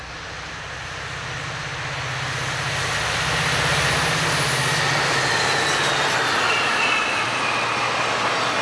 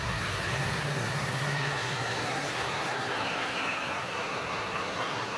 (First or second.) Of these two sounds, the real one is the first